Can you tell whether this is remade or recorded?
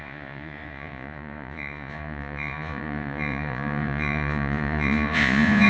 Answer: remade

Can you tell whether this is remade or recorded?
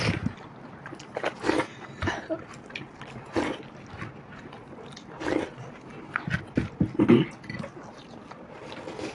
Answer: recorded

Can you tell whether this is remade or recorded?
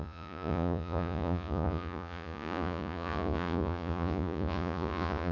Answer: remade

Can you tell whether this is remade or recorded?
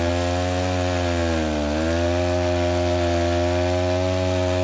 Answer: recorded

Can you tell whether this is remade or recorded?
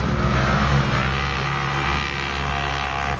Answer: recorded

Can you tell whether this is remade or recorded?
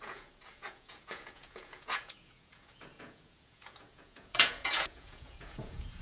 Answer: remade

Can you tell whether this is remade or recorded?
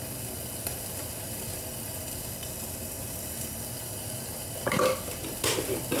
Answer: recorded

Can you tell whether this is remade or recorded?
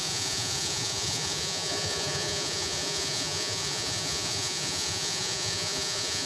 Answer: remade